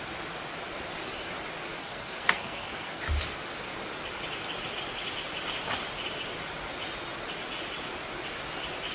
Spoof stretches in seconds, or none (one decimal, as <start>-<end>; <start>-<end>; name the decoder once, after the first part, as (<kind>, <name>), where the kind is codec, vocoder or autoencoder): 1.8-3.0 (codec, SNAC)